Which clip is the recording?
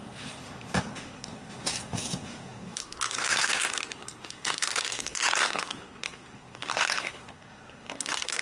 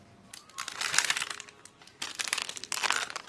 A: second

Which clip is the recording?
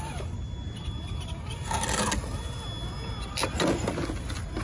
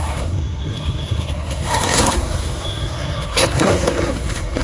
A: first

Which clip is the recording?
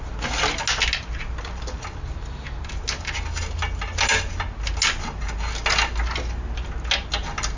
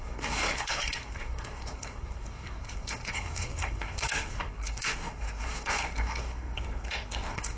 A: first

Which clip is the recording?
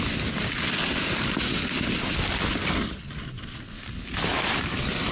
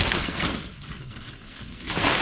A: first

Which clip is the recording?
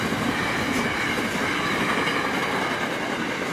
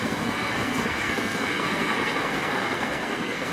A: first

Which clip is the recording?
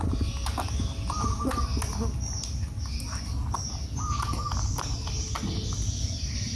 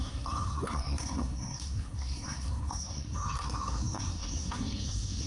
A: first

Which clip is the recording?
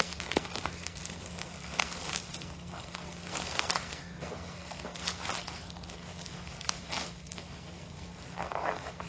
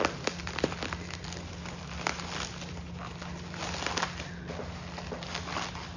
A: second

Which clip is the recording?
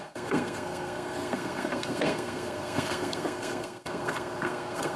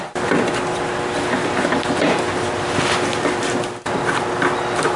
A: second